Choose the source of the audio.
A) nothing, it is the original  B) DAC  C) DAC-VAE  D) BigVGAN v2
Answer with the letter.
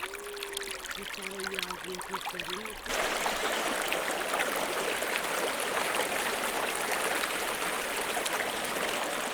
A